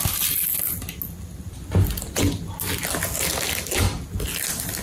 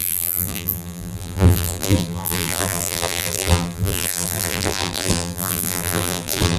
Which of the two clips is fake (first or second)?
second